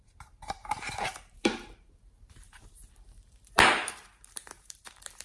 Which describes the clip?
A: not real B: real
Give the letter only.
A